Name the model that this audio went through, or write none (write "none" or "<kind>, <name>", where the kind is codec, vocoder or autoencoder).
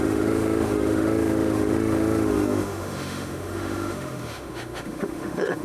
autoencoder, DAC-VAE